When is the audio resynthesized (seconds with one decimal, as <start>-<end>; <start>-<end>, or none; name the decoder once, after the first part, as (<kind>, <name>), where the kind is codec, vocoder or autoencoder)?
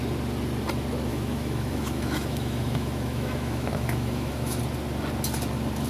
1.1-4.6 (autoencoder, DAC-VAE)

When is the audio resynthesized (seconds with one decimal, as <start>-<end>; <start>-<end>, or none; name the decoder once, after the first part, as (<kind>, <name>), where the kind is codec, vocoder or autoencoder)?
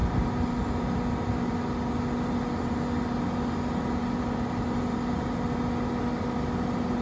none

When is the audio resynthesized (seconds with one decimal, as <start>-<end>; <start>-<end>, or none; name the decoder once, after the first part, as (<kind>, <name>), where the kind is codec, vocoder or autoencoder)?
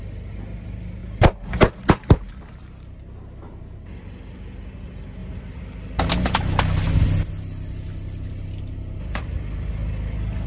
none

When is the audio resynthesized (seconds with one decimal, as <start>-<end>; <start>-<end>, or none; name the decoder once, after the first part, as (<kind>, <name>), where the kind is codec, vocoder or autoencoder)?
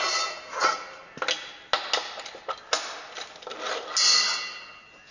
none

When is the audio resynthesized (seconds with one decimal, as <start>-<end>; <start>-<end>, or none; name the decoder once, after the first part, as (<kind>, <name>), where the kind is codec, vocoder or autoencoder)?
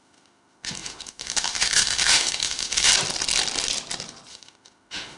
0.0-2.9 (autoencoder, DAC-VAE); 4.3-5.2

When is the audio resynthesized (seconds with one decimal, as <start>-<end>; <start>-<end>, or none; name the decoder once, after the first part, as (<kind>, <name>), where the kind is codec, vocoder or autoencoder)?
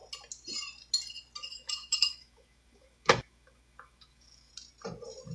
1.5-4.5 (autoencoder, DAC-VAE)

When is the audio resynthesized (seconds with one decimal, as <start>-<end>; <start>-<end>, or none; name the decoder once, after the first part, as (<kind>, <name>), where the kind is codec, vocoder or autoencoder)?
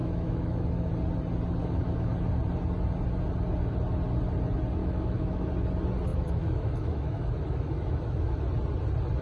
0.0-0.9 (autoencoder, DAC-VAE); 1.6-2.1; 4.8-5.5; 6.1-8.4